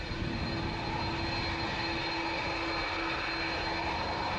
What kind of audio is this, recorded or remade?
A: recorded